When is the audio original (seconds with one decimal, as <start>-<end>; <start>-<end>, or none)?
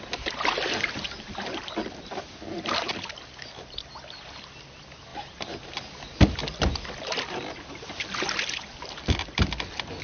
0.0-5.1; 5.8-10.0